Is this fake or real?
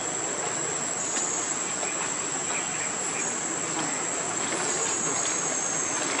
real